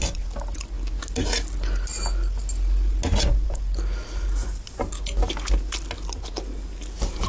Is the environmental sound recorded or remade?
recorded